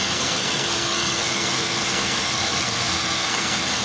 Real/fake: fake